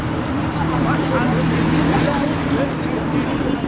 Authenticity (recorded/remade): recorded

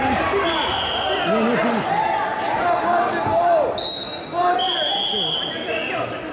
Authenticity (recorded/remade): recorded